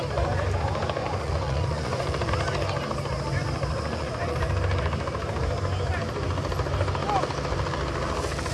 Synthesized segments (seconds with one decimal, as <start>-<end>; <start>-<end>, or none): 1.0-2.3; 3.7-4.4